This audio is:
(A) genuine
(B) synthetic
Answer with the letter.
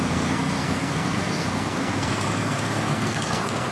B